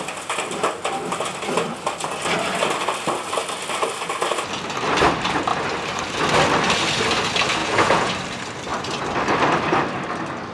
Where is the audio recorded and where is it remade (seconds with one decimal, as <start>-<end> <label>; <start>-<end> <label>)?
0.0-7.6 recorded; 7.6-8.1 remade; 8.1-10.5 recorded